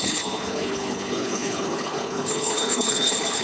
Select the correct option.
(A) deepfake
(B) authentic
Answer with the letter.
A